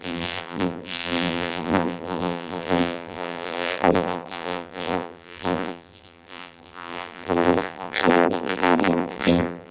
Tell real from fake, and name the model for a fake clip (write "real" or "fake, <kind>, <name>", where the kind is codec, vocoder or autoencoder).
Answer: fake, vocoder, BigVGAN v2